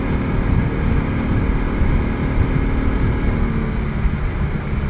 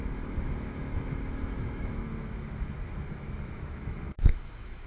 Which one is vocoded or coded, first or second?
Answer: second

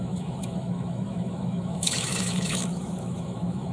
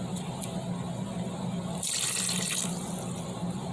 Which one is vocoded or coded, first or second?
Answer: first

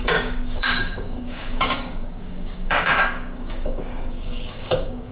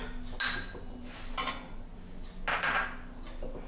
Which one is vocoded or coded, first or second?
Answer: first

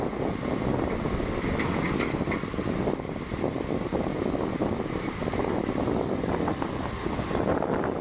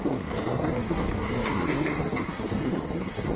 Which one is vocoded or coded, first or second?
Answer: second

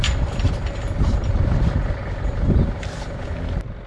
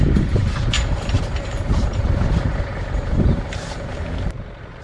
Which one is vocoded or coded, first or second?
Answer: second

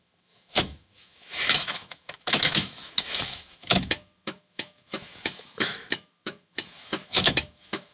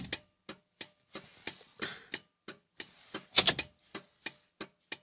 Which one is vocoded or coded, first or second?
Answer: first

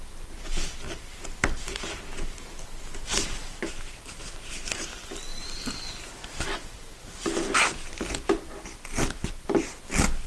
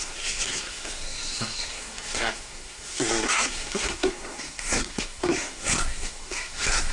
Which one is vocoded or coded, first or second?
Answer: second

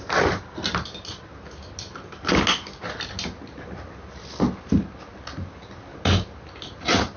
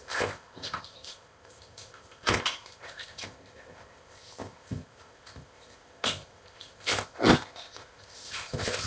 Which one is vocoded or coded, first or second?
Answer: second